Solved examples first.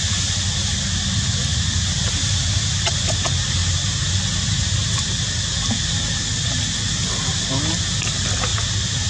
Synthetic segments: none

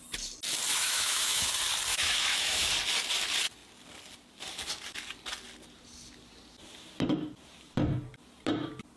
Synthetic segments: 0.7-1.5; 1.9-2.7

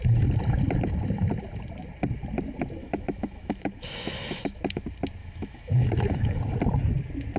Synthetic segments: 2.8-4.8; 5.2-6.4

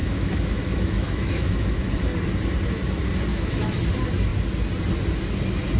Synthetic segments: 0.0-1.9; 3.3-3.9